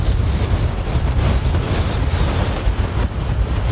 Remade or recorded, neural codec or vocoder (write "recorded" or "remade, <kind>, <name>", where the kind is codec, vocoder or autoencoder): recorded